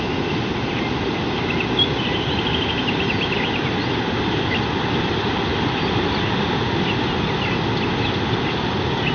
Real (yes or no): yes